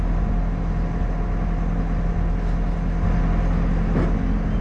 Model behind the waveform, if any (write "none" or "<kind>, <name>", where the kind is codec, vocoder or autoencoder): none